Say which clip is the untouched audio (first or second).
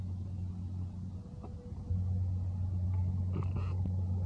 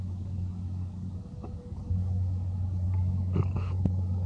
first